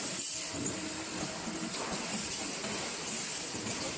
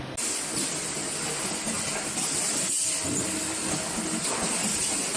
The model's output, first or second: first